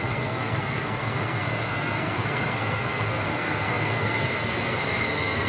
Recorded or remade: remade